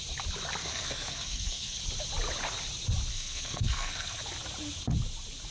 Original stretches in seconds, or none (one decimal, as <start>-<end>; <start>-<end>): 0.0-0.6; 1.8-3.1; 4.2-5.5